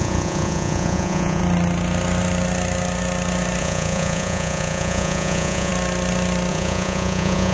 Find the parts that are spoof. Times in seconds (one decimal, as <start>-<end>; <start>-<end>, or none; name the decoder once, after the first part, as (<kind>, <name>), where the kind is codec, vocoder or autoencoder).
0.0-1.4 (vocoder, Vocos); 3.6-5.7; 6.5-7.5